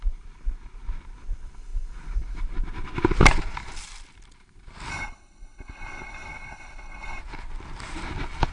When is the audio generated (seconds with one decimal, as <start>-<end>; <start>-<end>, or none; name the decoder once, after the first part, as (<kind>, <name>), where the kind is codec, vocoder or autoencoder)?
4.9-7.2 (codec, HILCodec)